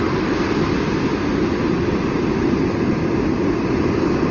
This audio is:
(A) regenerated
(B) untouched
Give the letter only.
B